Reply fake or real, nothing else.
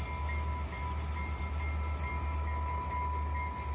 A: real